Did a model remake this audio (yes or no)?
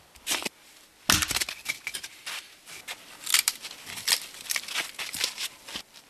no